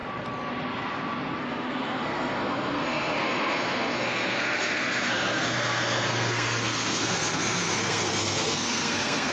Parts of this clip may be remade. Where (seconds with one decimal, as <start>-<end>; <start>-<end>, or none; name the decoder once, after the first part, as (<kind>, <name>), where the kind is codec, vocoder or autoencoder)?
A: 1.4-9.3 (codec, SNAC)